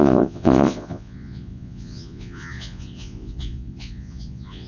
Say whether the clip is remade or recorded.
remade